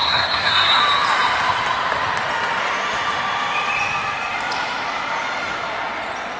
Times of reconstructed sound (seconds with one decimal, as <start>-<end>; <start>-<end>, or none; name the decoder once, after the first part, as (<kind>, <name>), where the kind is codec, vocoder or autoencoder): 0.0-0.8 (codec, SNAC)